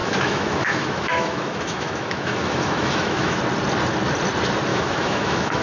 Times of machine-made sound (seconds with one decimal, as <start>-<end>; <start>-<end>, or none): 0.0-3.4; 4.7-5.6